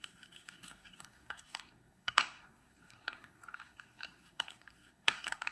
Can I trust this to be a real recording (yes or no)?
no